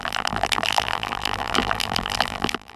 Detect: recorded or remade remade